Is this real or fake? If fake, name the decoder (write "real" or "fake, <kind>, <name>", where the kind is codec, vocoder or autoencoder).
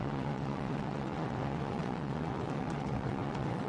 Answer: fake, vocoder, WaveNeXt